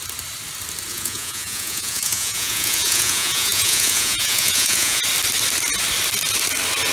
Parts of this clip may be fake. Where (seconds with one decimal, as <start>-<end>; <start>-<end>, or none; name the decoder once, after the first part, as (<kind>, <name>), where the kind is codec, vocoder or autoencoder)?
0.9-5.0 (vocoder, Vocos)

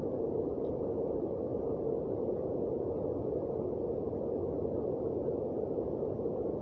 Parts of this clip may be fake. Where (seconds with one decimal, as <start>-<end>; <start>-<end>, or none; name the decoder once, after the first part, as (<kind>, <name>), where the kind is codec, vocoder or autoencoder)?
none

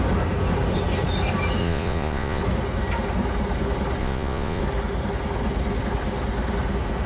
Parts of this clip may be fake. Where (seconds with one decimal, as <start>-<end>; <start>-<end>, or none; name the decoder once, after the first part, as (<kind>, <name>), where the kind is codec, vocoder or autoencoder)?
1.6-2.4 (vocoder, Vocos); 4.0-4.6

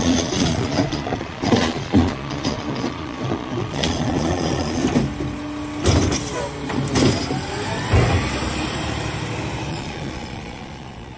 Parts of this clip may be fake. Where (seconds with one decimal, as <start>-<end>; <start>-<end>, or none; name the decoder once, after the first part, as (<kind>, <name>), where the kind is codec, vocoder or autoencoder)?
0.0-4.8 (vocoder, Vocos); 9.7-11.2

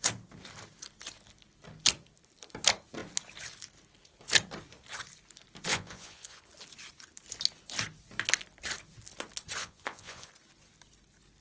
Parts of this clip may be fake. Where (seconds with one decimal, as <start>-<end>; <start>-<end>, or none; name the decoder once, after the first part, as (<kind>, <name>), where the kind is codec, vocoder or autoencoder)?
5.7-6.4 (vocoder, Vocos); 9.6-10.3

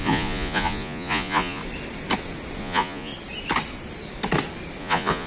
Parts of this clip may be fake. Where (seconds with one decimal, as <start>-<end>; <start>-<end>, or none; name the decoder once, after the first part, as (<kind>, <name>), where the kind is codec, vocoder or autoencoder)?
0.0-1.6 (vocoder, Vocos); 2.6-3.1; 4.8-5.3

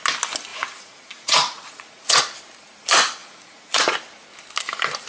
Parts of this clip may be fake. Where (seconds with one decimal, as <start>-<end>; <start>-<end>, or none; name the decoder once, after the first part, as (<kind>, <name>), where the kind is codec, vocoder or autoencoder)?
0.5-2.2 (vocoder, Vocos); 3.2-3.8